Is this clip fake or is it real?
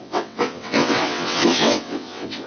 fake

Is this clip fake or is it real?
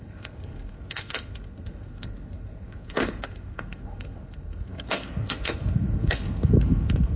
fake